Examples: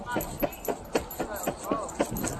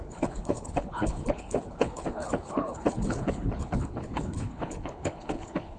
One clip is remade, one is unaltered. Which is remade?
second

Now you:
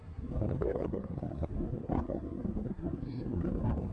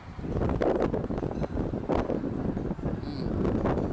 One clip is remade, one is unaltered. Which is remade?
first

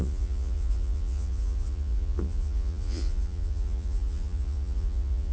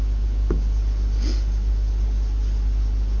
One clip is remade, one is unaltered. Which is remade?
first